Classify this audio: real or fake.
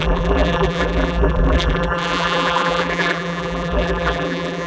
fake